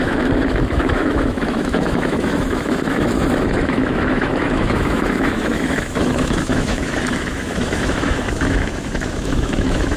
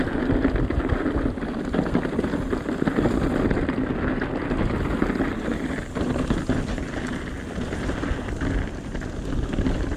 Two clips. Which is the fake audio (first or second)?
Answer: first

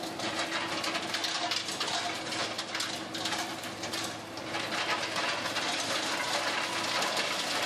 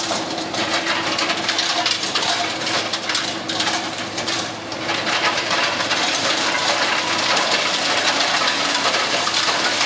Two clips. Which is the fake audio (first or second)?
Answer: second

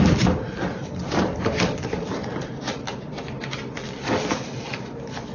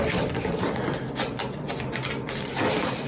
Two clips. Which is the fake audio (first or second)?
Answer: first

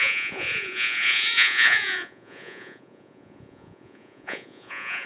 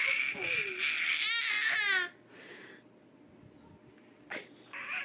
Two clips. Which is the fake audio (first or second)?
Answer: first